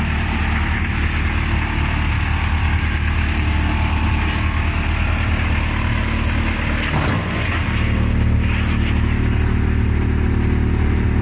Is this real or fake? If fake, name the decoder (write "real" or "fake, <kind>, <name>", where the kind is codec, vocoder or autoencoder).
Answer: real